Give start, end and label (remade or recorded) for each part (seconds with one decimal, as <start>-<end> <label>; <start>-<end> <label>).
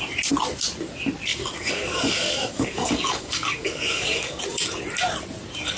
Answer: 0.0-1.3 recorded; 1.3-4.4 remade; 4.4-5.8 recorded